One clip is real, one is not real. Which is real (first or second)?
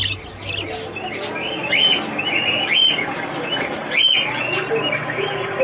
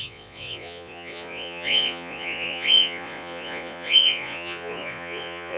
first